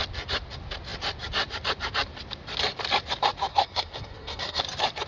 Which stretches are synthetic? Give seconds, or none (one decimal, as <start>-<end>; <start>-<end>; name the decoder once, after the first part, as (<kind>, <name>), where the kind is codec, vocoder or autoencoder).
3.5-4.6 (codec, SNAC)